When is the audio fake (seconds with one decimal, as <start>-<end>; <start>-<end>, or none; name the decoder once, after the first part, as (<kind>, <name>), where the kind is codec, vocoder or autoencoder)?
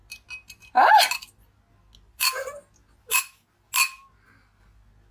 none